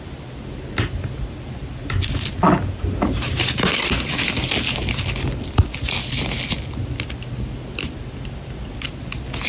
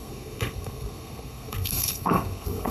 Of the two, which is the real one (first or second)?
first